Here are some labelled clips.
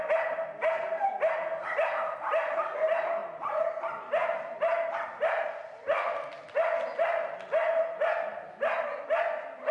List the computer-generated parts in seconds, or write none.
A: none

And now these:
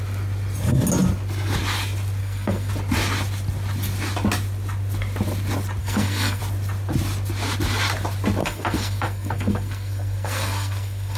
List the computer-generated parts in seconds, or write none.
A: 2.2-2.7 (codec, SNAC); 5.8-6.4; 8.4-11.2

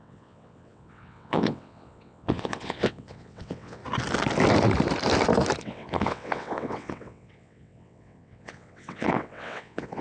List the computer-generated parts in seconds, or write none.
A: 0.0-3.8 (vocoder, WaveNeXt); 5.6-10.0

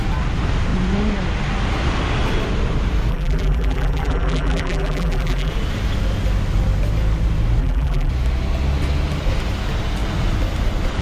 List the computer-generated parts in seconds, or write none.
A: 3.1-5.5 (vocoder, BigVGAN v2); 7.6-8.1

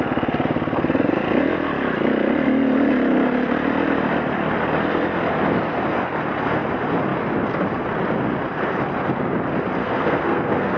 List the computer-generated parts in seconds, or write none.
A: 9.8-10.8 (codec, SNAC)